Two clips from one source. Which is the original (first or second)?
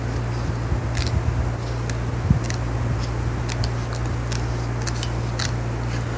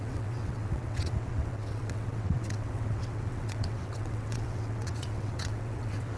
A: first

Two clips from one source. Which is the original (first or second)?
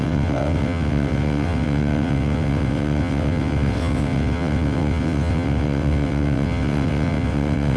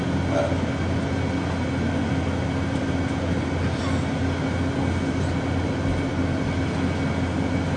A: second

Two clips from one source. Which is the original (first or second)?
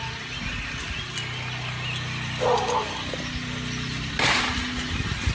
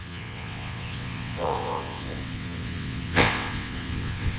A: first